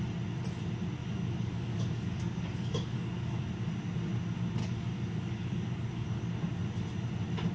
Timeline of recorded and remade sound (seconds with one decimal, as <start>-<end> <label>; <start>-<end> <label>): 0.0-1.0 recorded; 1.0-3.5 remade; 3.5-4.6 recorded; 4.6-6.3 remade; 6.3-7.5 recorded